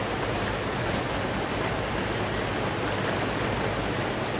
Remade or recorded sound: recorded